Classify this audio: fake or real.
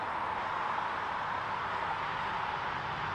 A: real